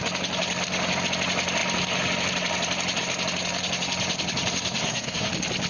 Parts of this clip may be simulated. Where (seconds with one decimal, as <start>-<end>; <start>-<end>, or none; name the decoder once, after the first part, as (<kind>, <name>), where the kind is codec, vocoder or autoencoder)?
4.8-5.3 (codec, SNAC)